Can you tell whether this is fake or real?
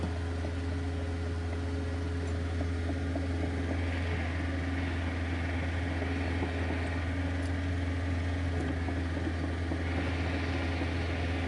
real